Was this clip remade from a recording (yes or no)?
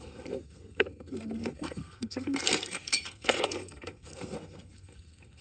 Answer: yes